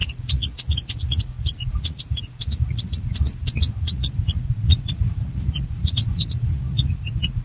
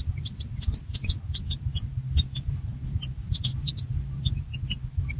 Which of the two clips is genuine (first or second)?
second